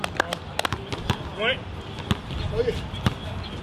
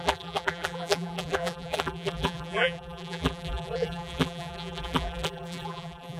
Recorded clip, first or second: first